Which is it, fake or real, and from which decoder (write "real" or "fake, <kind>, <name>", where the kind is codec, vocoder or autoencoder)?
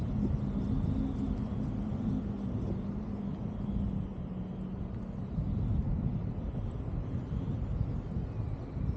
real